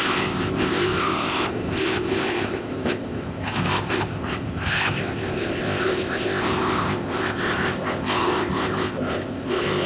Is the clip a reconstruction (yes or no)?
yes